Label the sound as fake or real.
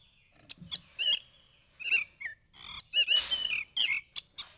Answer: real